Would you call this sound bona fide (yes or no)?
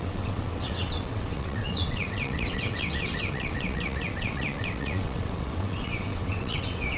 no